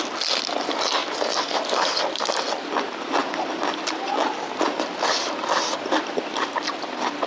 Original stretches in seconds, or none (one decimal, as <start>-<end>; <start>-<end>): 0.0-1.0; 2.5-7.3